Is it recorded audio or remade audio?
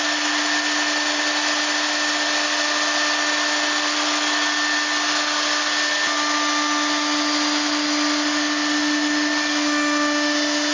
recorded